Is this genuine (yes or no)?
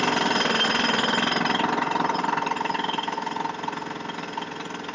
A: yes